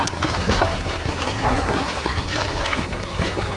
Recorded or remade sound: remade